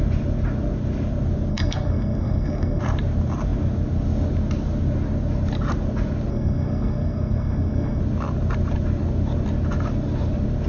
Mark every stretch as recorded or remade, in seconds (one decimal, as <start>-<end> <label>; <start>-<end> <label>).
0.0-1.5 recorded; 1.5-2.8 remade; 2.8-6.3 recorded; 6.3-8.0 remade; 8.0-10.7 recorded